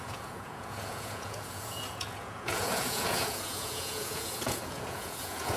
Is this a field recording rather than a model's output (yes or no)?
no